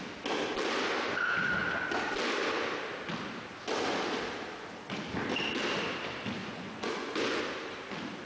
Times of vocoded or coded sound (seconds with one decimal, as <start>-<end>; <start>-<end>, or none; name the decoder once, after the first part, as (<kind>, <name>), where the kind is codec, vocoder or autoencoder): 6.4-7.4 (vocoder, Vocos)